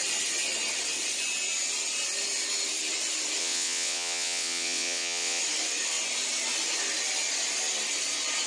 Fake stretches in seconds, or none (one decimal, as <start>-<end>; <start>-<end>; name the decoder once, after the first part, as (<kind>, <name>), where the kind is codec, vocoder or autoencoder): 3.4-5.4 (vocoder, WaveNeXt)